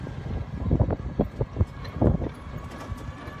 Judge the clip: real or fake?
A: real